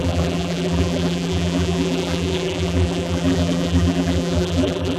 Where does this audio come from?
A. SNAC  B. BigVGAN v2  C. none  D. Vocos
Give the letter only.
B